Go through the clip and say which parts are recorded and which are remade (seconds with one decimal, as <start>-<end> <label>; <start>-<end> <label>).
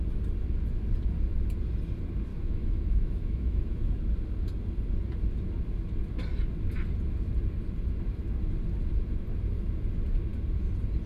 0.0-2.3 recorded; 2.3-3.9 remade; 3.9-11.1 recorded